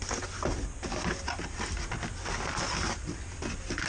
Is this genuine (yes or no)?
yes